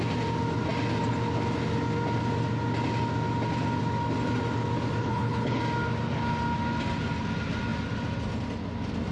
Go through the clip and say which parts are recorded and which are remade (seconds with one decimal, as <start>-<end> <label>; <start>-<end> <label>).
0.0-5.0 recorded; 5.0-5.6 remade; 5.6-9.1 recorded